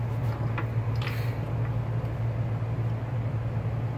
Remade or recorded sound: recorded